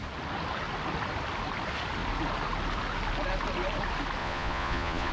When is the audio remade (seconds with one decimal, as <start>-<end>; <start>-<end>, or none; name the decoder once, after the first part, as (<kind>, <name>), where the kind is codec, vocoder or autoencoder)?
4.2-5.1 (vocoder, Vocos)